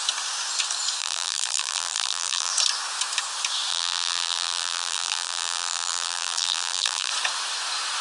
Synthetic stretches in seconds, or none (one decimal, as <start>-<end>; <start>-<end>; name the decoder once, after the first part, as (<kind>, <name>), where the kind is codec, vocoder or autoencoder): 1.0-2.5 (vocoder, BigVGAN v2); 3.7-7.1